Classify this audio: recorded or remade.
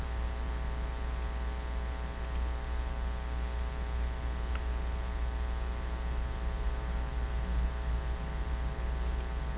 recorded